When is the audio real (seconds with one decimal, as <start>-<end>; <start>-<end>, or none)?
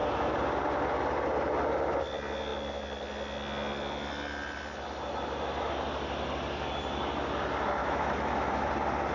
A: 0.0-7.8; 8.7-9.1